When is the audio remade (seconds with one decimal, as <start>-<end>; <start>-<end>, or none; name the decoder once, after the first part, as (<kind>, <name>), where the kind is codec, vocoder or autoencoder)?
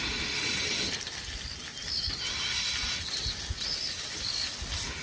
none